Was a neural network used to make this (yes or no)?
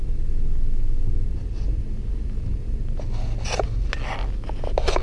no